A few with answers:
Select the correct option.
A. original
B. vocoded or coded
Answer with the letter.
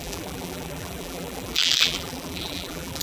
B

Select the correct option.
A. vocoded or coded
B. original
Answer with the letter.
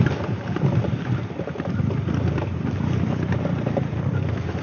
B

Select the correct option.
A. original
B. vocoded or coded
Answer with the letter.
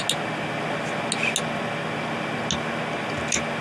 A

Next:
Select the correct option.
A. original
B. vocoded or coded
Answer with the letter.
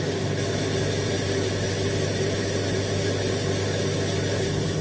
A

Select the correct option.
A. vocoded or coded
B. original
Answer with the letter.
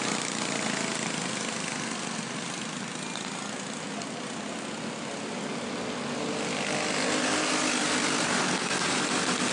B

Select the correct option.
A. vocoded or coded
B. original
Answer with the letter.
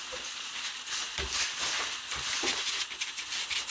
B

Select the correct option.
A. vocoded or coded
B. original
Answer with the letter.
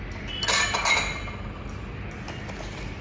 B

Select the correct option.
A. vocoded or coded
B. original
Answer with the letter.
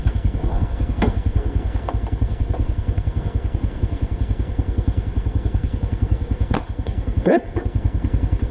A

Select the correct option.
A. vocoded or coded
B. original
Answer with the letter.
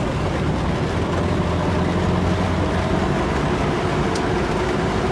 B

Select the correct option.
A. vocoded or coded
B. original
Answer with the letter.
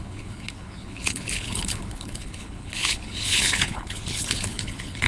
A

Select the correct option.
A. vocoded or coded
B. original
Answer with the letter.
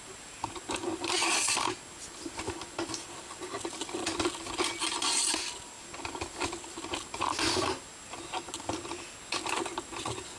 B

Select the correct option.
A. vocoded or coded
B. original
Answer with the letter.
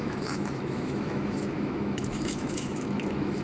A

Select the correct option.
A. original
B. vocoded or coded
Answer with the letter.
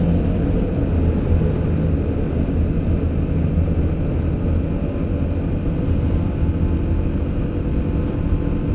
A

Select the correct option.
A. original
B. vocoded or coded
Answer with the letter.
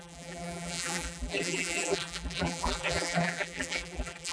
B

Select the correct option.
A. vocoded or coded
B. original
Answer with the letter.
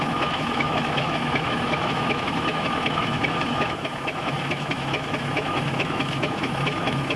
A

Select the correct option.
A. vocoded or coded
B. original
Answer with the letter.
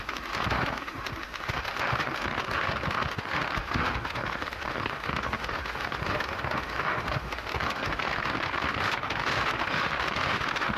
A